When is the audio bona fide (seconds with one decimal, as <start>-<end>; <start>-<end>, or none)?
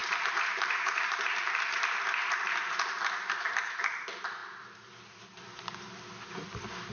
1.8-2.2; 3.9-6.9